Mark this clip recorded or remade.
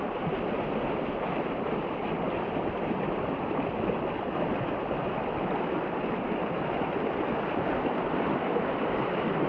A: recorded